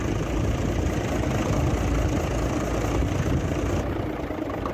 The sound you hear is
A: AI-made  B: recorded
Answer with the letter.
B